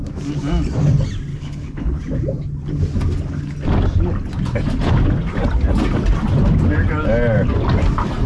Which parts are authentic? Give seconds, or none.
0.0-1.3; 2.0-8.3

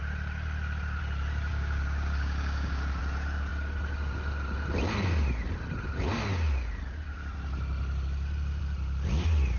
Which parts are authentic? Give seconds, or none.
0.0-1.5; 3.0-9.6

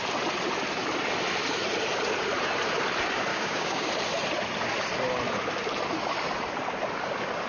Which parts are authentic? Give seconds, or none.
0.0-3.3; 3.9-7.5

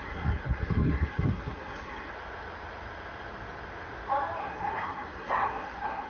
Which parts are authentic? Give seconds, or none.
2.1-4.4

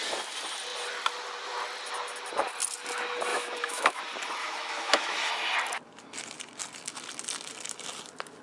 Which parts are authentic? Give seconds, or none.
0.0-3.3; 4.0-4.4; 5.3-8.4

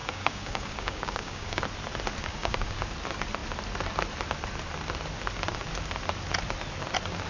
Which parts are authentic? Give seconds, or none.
1.6-2.2; 2.8-7.3

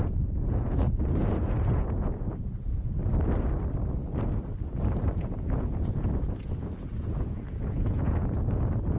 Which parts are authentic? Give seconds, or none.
3.0-5.0

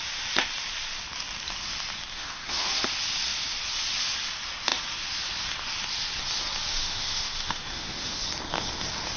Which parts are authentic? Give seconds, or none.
0.0-2.1; 2.7-6.7; 8.2-9.2